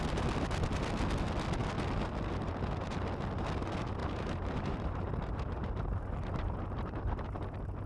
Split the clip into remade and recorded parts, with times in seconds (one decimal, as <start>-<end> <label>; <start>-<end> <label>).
0.0-4.0 recorded; 4.0-7.1 remade; 7.1-7.9 recorded